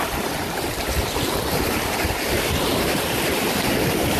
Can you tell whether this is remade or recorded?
remade